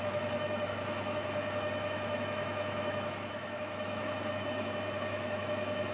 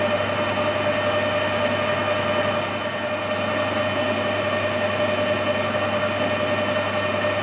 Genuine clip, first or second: second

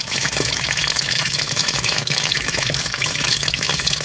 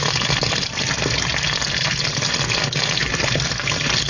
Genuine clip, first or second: second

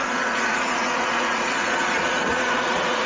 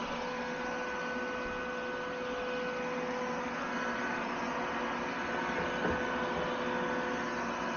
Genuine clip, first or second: second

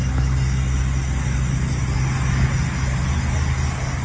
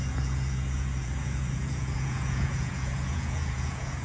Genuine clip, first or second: first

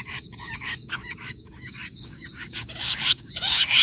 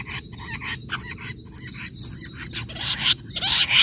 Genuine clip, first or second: second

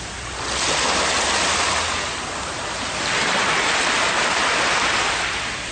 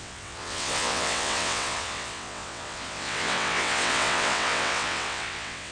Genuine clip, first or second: first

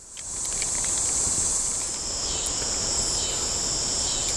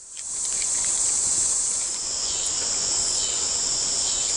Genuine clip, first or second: first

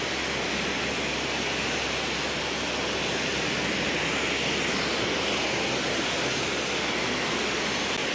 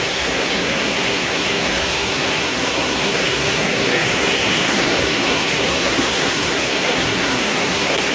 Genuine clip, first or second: first